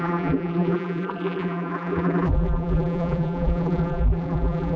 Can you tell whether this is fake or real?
fake